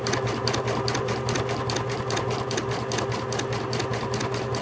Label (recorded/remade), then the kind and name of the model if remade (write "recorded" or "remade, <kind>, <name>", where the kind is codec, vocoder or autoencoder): recorded